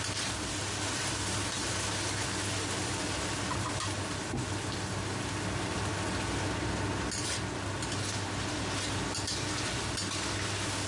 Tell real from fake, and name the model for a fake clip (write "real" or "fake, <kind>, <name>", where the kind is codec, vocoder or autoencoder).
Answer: real